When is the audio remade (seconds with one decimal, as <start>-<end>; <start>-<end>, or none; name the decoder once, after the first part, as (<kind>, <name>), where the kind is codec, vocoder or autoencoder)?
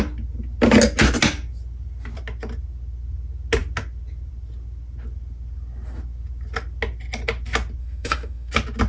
7.8-8.5 (autoencoder, DAC-VAE)